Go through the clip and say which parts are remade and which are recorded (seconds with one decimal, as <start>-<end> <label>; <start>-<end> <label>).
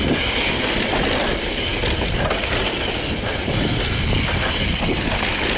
0.0-5.6 recorded